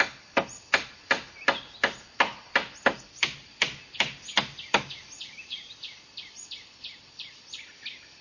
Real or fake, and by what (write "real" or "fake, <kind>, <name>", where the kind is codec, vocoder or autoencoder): real